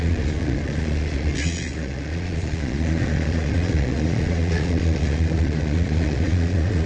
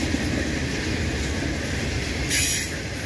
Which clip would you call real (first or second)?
second